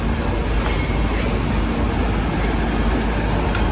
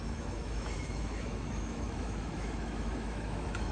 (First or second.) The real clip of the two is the first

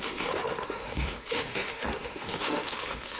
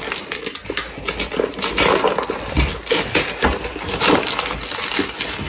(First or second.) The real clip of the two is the second